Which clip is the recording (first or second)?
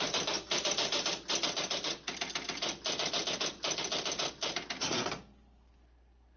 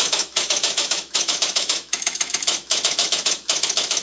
first